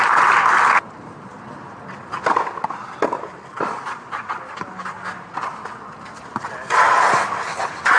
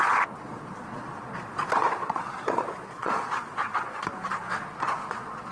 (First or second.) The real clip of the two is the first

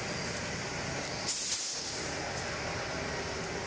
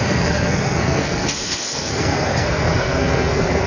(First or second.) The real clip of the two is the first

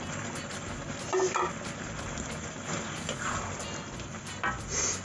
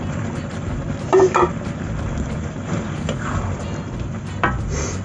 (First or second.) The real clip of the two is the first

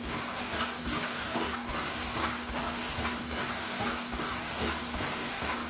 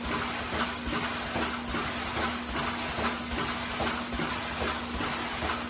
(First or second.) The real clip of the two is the second